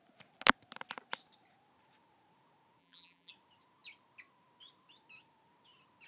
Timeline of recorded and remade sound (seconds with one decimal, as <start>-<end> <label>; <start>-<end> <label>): 0.0-2.8 recorded; 2.8-3.3 remade; 3.3-6.1 recorded